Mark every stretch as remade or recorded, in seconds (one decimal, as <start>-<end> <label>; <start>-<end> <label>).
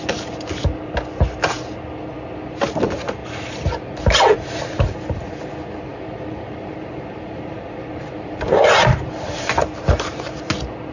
0.0-3.2 recorded; 3.2-5.5 remade; 5.5-5.9 recorded; 5.9-10.5 remade; 10.5-10.9 recorded